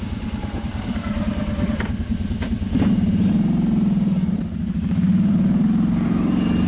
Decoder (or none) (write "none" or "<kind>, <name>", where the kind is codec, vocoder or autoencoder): vocoder, BigVGAN v2